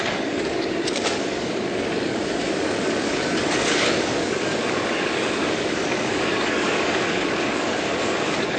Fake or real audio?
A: fake